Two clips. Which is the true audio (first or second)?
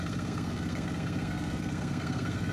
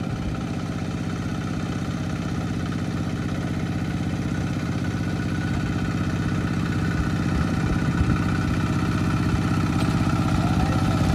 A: second